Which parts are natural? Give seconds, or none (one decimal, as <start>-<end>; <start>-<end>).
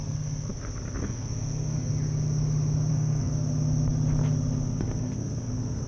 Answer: 0.5-1.0; 1.9-2.9; 3.3-4.8